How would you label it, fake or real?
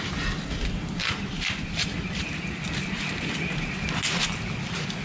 real